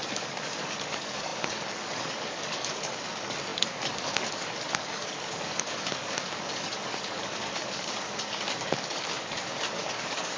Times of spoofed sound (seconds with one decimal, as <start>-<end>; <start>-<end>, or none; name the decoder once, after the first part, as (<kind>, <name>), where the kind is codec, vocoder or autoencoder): 0.0-10.4 (codec, DAC)